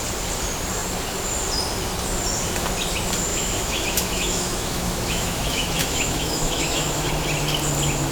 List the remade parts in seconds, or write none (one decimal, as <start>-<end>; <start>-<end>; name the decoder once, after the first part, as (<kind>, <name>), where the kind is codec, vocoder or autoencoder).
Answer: 3.3-7.1 (autoencoder, DAC-VAE)